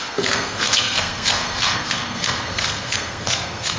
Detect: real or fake fake